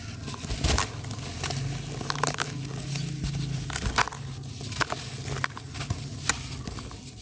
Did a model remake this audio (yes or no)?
no